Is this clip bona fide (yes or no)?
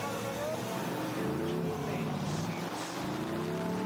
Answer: yes